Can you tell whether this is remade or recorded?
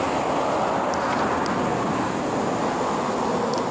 recorded